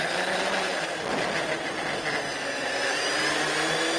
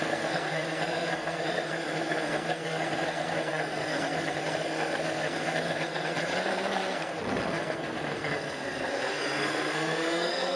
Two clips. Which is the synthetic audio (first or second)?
second